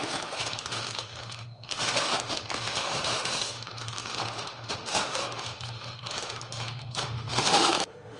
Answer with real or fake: fake